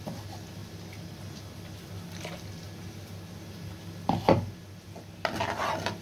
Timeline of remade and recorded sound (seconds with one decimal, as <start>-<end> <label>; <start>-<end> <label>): 0.0-6.0 recorded